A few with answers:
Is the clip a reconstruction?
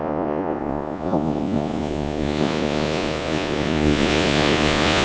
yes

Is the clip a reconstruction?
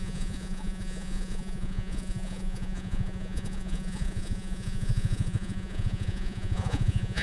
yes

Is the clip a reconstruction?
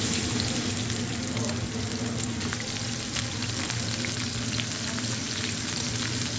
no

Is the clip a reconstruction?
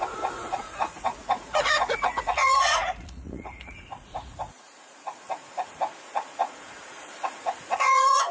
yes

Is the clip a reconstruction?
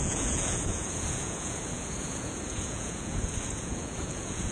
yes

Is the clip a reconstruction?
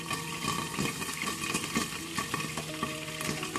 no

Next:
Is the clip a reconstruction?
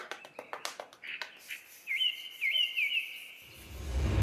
no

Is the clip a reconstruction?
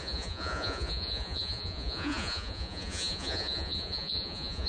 yes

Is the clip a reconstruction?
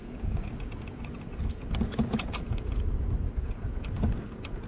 yes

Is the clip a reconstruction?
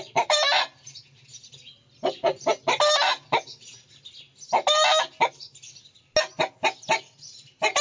no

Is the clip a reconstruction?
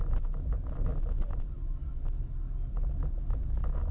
no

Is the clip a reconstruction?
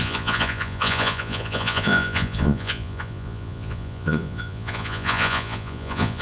yes